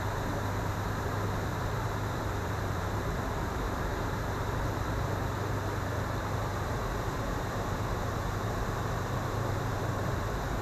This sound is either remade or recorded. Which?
remade